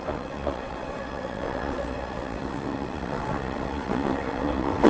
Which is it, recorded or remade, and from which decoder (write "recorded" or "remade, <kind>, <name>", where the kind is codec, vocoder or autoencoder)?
remade, vocoder, WaveNeXt